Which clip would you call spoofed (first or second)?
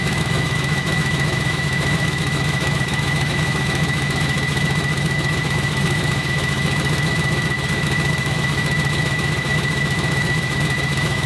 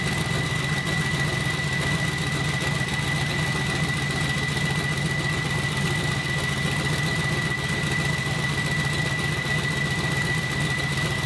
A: first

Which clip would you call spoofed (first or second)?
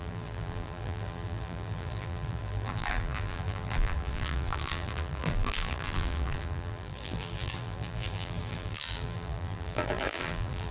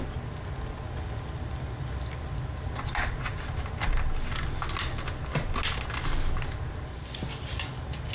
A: first